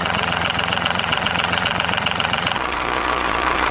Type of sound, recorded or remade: remade